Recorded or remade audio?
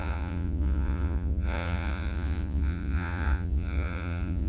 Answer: remade